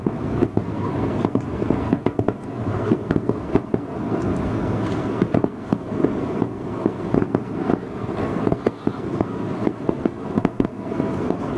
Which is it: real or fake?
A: fake